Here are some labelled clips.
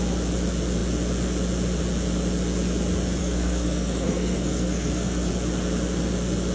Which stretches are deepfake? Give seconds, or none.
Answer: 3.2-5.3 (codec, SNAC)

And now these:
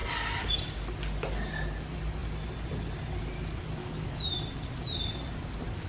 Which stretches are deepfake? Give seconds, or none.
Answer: 3.8-4.4 (codec, DAC)

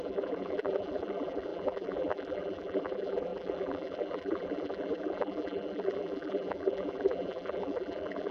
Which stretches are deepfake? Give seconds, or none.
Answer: 0.0-8.3 (vocoder, BigVGAN v2)

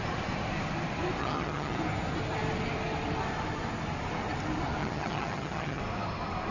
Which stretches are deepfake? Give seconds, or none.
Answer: 1.2-1.8 (vocoder, HiFi-GAN); 4.8-5.8

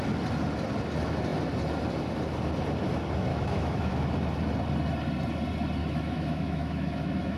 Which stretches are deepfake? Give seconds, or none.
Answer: 3.3-3.9 (autoencoder, DAC-VAE); 5.8-7.4

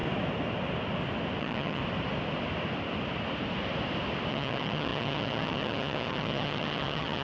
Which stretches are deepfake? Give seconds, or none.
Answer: 1.4-1.8 (vocoder, HiFi-GAN); 4.3-7.2